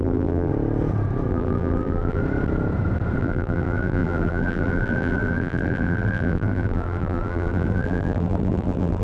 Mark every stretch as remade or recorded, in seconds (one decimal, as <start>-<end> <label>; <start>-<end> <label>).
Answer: 0.0-0.5 remade; 0.5-1.3 recorded; 1.3-2.2 remade; 2.2-3.2 recorded; 3.2-9.0 remade